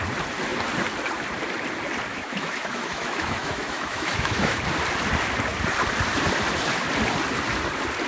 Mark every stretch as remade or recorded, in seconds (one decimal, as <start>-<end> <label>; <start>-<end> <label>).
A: 0.0-2.1 recorded; 2.1-4.6 remade; 4.6-8.1 recorded